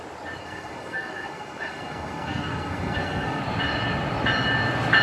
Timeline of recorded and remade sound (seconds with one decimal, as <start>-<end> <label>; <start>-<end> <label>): 0.0-0.4 recorded; 0.4-3.4 remade; 3.4-5.0 recorded